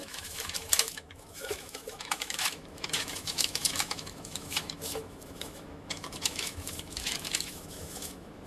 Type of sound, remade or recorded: remade